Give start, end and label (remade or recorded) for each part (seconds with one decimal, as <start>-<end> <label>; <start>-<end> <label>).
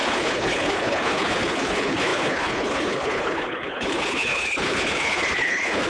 0.0-5.9 remade